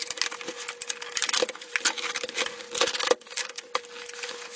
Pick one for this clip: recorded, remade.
recorded